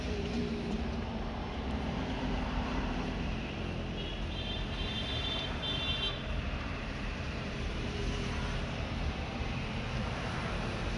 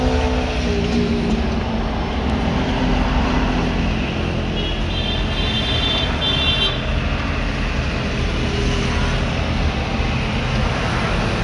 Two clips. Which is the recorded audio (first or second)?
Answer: second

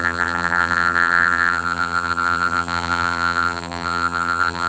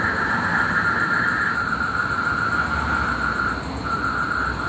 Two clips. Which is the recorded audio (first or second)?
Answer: second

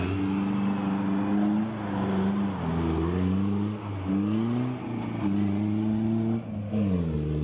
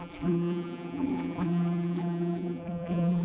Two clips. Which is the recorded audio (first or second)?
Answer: first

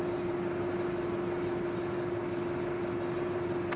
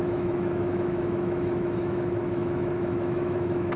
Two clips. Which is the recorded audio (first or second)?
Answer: first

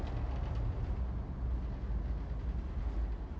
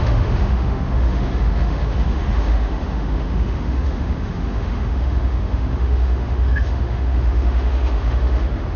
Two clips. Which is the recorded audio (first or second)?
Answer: first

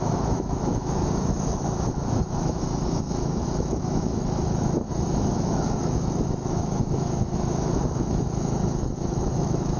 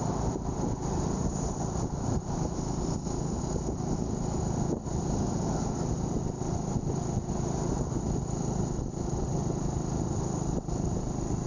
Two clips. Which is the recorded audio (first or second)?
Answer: second